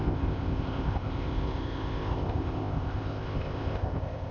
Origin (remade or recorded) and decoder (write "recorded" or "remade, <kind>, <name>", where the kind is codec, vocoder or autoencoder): remade, codec, ZipCodec